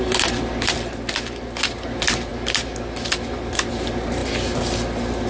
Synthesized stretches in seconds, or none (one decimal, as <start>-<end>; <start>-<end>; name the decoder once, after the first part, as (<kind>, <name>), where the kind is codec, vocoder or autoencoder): none